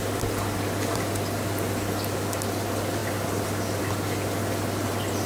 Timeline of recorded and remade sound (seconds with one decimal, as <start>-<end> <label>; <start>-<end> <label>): 0.0-3.0 recorded; 3.0-3.8 remade; 3.8-5.3 recorded